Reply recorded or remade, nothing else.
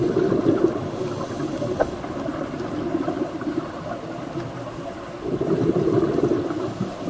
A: recorded